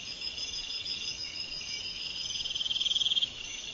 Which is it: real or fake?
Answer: fake